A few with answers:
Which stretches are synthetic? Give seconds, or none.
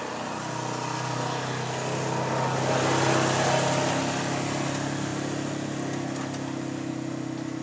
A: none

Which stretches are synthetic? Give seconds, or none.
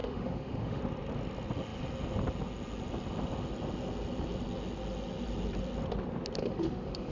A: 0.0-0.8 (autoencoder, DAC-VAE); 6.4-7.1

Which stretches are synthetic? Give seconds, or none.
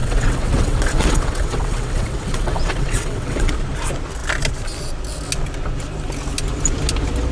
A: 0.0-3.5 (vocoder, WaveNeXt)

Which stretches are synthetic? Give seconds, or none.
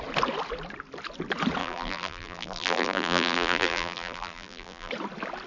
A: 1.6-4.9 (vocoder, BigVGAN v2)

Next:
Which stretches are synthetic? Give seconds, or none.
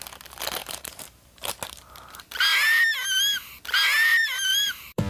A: 0.6-1.5 (vocoder, BigVGAN v2); 4.1-5.1